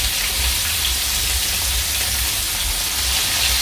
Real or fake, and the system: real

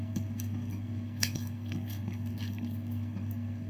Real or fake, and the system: fake, codec, SNAC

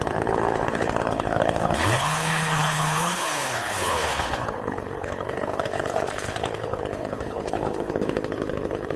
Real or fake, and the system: fake, codec, HILCodec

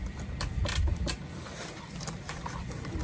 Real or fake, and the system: fake, vocoder, BigVGAN v2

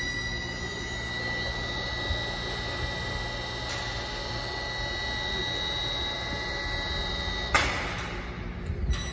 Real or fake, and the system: real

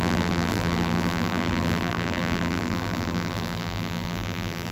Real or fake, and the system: fake, vocoder, BigVGAN v2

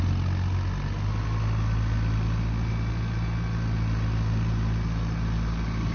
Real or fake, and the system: real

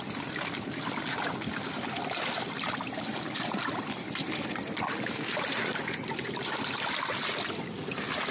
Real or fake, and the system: real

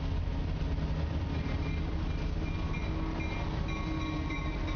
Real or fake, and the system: real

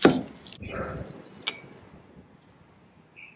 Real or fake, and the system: real